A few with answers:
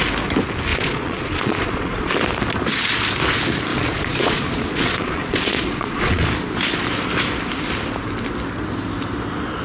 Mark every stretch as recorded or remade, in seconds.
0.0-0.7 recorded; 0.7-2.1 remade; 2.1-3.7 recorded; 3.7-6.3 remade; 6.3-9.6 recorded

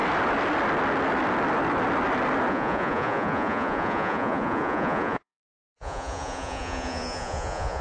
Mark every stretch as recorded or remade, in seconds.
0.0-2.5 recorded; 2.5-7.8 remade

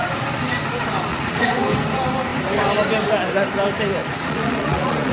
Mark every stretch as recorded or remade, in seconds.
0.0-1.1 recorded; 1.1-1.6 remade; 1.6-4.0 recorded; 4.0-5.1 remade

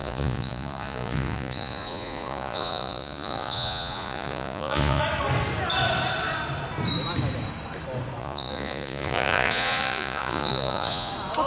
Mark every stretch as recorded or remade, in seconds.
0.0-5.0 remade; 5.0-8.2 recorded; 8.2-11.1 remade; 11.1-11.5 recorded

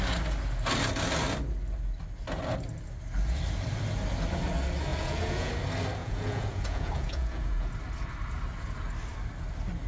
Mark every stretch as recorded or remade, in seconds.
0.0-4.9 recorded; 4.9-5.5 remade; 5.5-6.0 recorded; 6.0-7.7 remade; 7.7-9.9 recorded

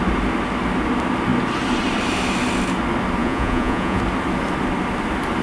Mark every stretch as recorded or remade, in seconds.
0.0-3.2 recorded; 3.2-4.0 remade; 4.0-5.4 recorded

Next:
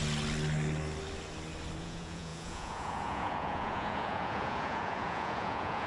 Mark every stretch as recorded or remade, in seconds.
0.0-1.8 recorded; 1.8-5.9 remade

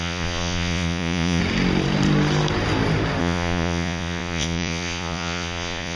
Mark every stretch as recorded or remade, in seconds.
0.0-1.4 remade; 1.4-3.2 recorded; 3.2-6.0 remade